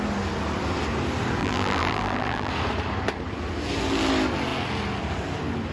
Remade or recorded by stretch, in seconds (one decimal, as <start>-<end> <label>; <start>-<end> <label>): 0.0-1.4 recorded; 1.4-2.5 remade; 2.5-5.7 recorded